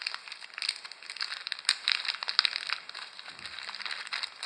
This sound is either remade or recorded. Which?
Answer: recorded